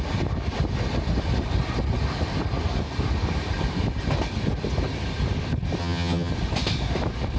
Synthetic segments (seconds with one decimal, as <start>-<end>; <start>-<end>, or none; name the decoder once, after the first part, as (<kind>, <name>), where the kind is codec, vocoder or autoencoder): 5.8-6.3 (vocoder, HiFi-GAN)